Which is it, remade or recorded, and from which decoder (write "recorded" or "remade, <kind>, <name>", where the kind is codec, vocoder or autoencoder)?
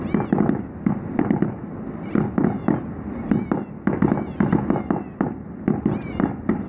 recorded